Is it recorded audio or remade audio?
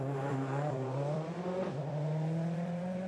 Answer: remade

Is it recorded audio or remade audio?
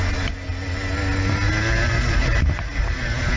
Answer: recorded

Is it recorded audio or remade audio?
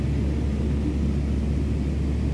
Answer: recorded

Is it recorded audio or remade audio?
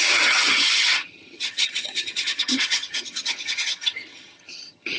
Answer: remade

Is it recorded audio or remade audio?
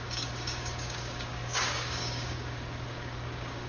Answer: remade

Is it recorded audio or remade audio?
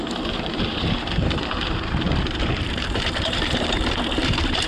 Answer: remade